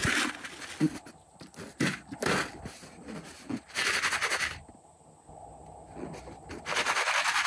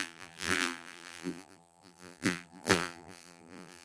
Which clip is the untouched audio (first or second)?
first